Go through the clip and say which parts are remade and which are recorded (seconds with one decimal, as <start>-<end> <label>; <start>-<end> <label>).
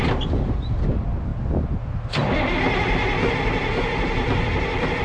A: 0.0-5.0 recorded